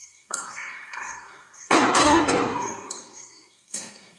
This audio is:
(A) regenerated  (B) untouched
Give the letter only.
A